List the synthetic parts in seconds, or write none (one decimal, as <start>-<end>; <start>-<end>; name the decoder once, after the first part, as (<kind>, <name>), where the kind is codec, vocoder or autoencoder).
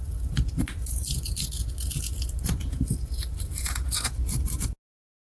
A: none